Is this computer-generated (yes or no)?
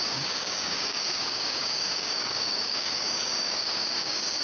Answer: yes